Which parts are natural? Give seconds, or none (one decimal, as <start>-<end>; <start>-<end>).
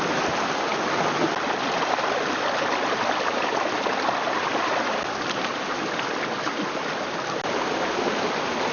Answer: 0.0-8.7